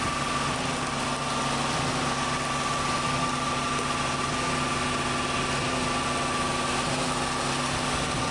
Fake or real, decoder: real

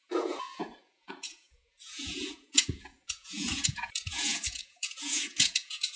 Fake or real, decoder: fake, vocoder, Vocos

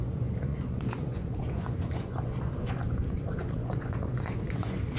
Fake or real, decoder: fake, vocoder, Vocos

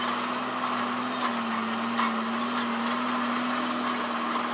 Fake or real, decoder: real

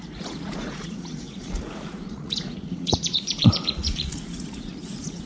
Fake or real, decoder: fake, vocoder, Vocos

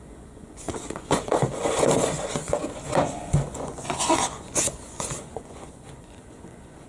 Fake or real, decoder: fake, vocoder, Vocos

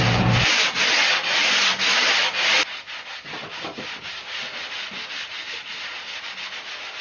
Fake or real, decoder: real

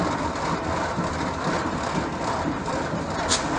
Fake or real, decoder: real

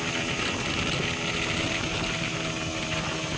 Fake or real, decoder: real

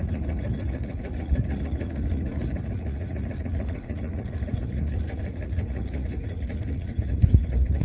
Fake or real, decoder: fake, vocoder, Vocos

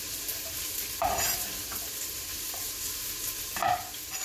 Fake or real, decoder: real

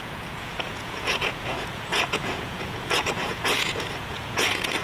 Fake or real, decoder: fake, vocoder, Vocos